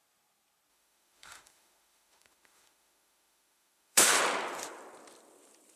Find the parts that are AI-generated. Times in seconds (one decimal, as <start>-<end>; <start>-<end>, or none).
0.7-4.2